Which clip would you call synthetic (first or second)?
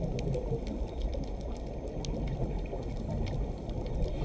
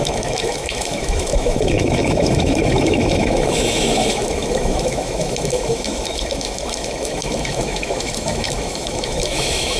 second